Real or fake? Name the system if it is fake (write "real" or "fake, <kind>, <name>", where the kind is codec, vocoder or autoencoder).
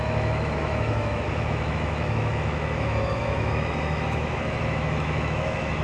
fake, autoencoder, DAC-VAE